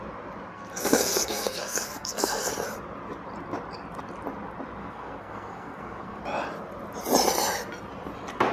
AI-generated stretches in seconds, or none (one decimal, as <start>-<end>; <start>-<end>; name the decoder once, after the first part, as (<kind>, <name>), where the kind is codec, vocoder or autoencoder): 0.5-2.5 (codec, SNAC); 4.8-6.2